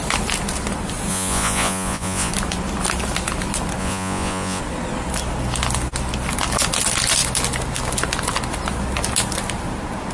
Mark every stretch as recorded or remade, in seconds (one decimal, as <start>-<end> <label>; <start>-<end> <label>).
0.0-1.1 recorded; 1.1-2.3 remade; 2.3-3.8 recorded; 3.8-4.6 remade; 4.6-10.1 recorded